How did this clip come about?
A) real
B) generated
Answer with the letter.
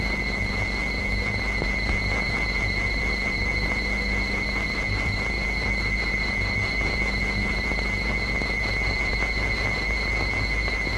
A